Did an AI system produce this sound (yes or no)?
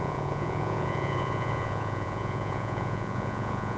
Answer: yes